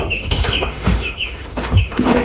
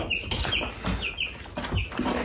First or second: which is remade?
first